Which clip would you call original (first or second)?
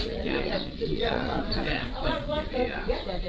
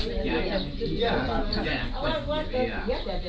second